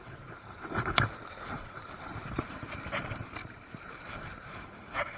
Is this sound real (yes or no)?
no